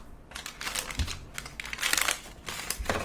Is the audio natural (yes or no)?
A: yes